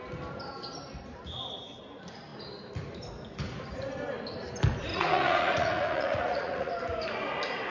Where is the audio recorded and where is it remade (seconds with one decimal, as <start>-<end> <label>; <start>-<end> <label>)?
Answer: 0.0-4.9 recorded; 4.9-6.7 remade; 6.7-7.7 recorded